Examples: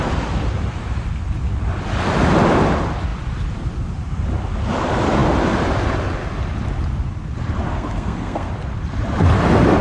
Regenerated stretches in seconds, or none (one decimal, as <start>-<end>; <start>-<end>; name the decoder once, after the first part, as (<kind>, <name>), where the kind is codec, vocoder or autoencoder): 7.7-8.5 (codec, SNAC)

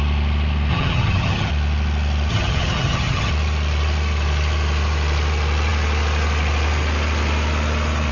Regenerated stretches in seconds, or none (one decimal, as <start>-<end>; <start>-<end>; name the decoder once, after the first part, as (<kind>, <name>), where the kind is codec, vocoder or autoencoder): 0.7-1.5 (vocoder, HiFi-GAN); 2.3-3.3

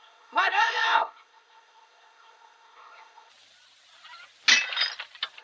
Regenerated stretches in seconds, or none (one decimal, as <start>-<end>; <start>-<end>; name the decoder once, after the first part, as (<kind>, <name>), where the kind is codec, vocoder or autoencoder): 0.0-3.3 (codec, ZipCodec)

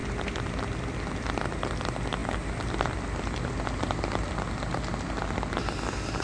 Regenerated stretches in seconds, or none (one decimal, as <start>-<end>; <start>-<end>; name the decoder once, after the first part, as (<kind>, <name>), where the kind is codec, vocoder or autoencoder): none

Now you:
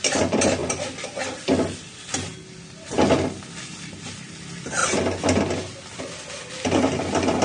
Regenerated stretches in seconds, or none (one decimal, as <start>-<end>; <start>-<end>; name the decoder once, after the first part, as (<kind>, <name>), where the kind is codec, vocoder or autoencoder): 0.0-0.6 (vocoder, BigVGAN v2); 3.8-4.8; 6.0-7.4